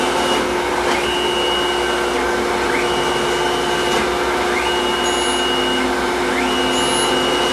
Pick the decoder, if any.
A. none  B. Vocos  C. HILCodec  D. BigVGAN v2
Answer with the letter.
A